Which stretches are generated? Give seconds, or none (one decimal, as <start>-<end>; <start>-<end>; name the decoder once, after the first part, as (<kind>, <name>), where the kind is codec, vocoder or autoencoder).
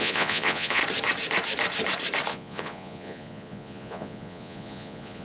0.0-0.8 (vocoder, Vocos); 2.3-5.2